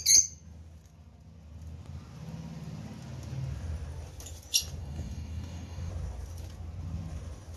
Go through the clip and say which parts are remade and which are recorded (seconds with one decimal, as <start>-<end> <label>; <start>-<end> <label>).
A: 0.0-4.8 recorded; 4.8-5.9 remade; 5.9-7.6 recorded